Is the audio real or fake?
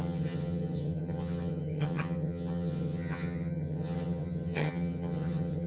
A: fake